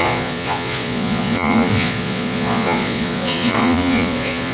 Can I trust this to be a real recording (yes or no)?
no